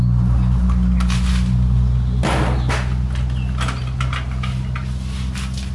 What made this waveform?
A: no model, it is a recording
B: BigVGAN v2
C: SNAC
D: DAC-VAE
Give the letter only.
A